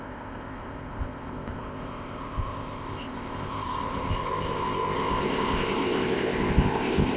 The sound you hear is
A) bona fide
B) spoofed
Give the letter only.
B